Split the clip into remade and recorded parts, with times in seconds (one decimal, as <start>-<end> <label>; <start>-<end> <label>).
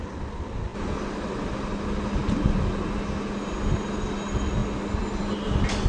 0.0-5.9 recorded